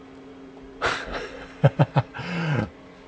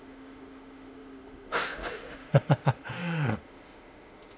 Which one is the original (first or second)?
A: first